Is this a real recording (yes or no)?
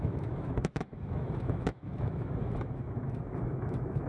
no